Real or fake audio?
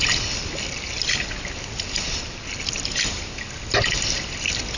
real